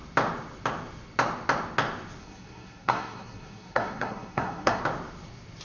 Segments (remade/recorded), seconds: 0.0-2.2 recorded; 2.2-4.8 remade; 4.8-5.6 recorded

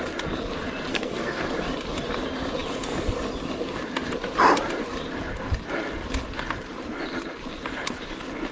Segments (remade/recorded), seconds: 0.0-0.9 recorded; 0.9-1.4 remade; 1.4-8.5 recorded

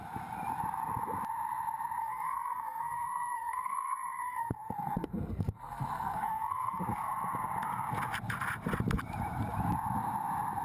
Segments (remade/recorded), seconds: 0.0-2.0 recorded; 2.0-6.8 remade; 6.8-10.6 recorded

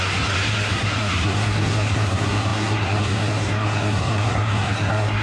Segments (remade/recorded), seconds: 0.0-5.2 remade